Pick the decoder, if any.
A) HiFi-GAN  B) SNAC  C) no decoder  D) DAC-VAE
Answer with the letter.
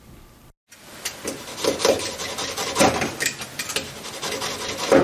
C